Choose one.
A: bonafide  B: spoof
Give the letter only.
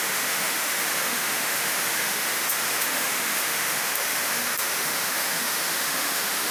B